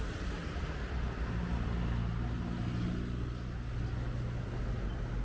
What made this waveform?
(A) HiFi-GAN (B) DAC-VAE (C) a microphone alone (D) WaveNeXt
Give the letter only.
C